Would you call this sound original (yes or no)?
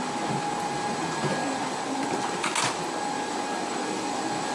yes